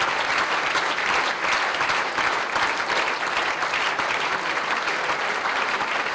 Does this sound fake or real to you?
real